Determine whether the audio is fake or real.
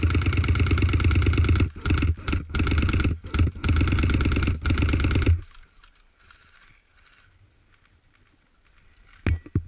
real